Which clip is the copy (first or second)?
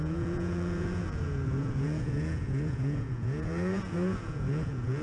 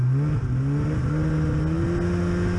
first